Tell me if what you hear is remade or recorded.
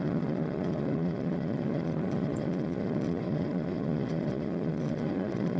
remade